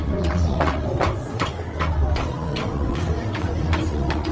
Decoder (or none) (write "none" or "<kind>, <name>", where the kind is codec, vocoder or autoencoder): vocoder, WaveNeXt